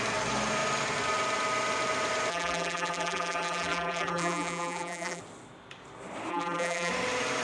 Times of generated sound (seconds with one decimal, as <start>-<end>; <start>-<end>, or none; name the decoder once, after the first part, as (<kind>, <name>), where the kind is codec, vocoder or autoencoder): 2.3-5.2 (vocoder, BigVGAN v2); 6.3-6.9